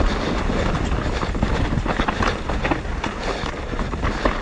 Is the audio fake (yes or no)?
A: no